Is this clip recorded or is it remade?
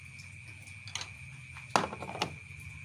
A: recorded